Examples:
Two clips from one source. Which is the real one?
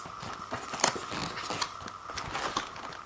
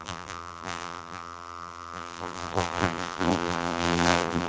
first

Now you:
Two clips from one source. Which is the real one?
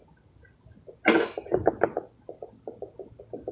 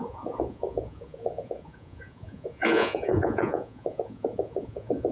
first